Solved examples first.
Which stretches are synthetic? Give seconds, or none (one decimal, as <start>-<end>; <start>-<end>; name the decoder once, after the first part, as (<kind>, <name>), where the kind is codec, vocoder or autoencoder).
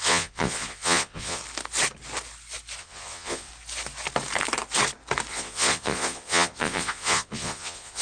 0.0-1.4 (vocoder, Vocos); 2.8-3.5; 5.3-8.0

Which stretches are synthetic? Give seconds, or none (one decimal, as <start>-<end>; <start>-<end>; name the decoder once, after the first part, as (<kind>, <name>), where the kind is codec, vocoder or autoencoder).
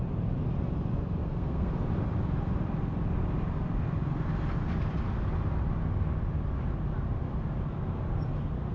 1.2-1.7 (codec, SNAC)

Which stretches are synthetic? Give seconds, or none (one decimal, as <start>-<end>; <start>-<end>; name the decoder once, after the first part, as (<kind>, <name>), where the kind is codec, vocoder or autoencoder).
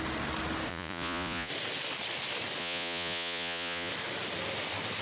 0.7-1.5 (vocoder, Vocos); 2.6-3.9